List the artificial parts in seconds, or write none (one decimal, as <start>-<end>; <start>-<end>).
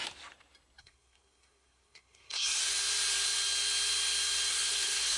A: 0.8-2.6; 4.5-5.2